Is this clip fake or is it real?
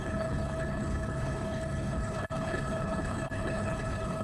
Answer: fake